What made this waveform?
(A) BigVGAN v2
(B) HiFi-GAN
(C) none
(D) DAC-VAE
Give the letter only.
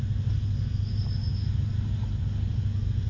C